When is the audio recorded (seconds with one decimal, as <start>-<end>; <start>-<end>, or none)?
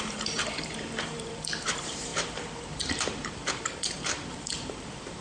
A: none